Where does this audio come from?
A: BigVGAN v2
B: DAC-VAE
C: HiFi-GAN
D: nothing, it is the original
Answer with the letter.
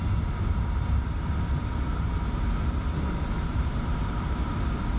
A